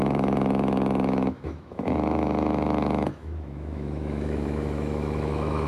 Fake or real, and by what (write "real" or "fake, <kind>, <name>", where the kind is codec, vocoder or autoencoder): fake, autoencoder, DAC-VAE